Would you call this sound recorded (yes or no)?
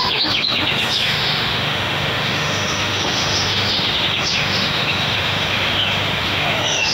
no